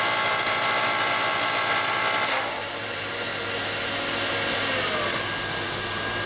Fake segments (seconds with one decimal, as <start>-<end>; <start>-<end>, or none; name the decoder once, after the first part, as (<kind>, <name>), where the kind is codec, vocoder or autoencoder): 0.0-3.3 (vocoder, BigVGAN v2)